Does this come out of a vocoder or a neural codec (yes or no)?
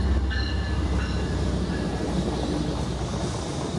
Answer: no